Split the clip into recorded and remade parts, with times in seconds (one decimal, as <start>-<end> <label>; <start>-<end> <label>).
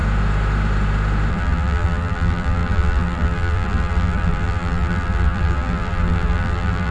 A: 0.0-1.3 recorded; 1.3-6.9 remade